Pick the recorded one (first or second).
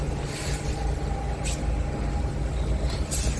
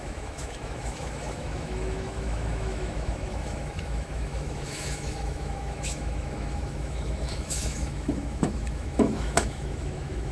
first